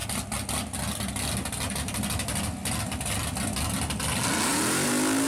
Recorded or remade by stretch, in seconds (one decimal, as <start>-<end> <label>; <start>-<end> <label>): 0.0-5.3 recorded